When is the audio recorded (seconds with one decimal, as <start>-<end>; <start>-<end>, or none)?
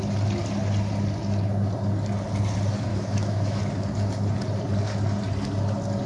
0.0-2.9; 3.6-6.1